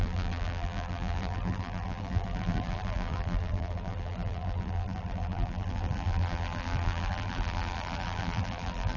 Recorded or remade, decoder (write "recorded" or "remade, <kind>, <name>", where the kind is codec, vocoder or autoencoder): remade, vocoder, BigVGAN v2